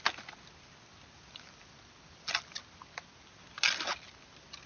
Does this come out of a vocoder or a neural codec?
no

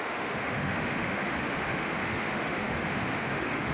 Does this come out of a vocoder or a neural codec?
yes